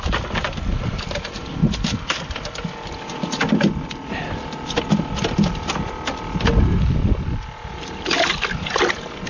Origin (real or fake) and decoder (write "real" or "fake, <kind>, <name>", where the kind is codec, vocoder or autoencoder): real